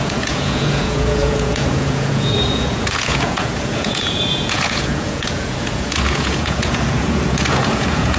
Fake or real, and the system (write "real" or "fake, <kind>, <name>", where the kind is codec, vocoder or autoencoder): fake, vocoder, Vocos